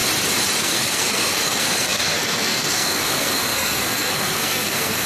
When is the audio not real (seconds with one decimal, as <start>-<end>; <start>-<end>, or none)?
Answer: 0.6-5.1